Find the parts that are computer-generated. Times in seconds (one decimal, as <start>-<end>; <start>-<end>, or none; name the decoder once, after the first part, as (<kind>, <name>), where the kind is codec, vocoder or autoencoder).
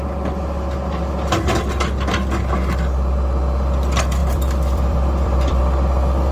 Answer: 4.2-5.6 (vocoder, BigVGAN v2)